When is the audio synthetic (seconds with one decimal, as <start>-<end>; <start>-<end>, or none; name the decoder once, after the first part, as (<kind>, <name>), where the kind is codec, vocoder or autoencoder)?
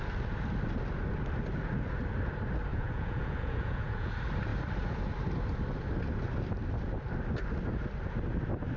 2.7-4.1 (vocoder, Vocos)